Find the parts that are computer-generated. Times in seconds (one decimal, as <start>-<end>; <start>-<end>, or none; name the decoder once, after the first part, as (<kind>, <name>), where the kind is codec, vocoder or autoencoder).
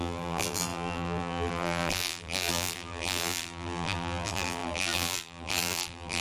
0.0-6.2 (vocoder, BigVGAN v2)